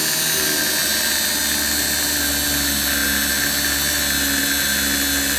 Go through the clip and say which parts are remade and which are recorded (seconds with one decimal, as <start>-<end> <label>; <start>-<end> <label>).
0.0-5.4 recorded